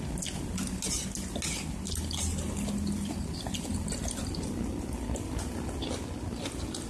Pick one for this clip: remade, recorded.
recorded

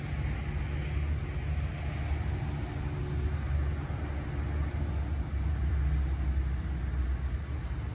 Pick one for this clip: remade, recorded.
recorded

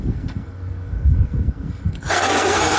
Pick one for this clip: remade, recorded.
remade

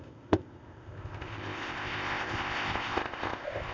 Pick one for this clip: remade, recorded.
remade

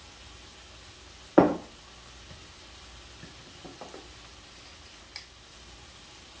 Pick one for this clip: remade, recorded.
recorded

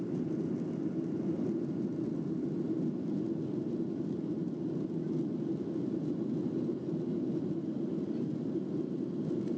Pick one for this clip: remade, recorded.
recorded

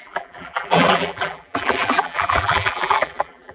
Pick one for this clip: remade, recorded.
remade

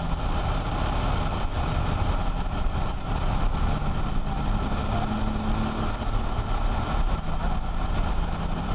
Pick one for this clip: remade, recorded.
recorded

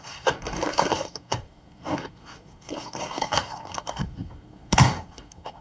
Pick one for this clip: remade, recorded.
remade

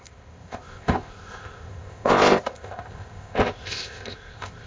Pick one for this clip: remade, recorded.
remade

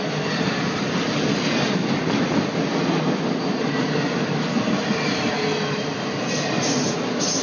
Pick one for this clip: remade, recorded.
recorded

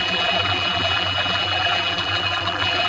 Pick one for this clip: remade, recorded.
remade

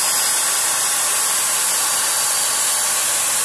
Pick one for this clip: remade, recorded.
recorded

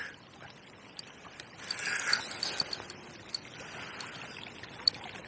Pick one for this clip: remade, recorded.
recorded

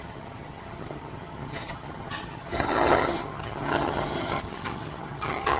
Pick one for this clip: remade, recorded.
remade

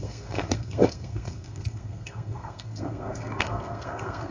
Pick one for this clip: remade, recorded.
remade